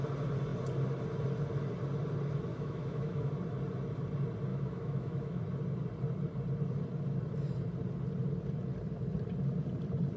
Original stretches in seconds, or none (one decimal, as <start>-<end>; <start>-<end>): 0.0-2.5; 3.3-4.5; 5.4-10.2

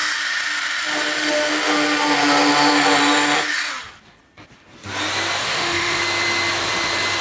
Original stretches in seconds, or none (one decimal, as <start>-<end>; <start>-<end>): 0.0-5.4; 6.0-7.2

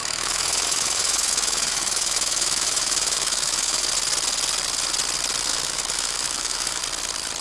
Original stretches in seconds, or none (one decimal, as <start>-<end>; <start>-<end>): 3.9-5.5; 6.8-7.4

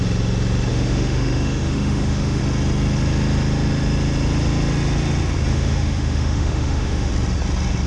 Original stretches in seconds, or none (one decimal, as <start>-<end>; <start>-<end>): 0.0-0.7; 2.4-5.5; 7.1-7.9

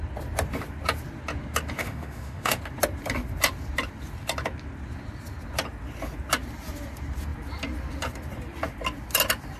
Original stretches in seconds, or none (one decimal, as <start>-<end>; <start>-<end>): 0.0-1.8; 2.6-9.6